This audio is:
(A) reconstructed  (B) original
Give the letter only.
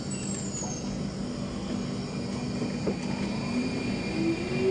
B